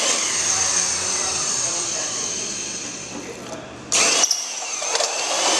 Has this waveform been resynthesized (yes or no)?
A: yes